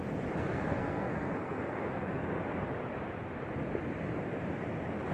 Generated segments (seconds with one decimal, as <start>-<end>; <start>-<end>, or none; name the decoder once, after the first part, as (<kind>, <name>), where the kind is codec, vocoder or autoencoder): 0.4-2.4 (codec, SNAC)